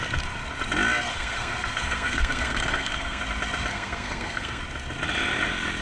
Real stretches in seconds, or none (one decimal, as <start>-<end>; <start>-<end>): 0.0-1.1; 3.2-3.7; 4.6-5.8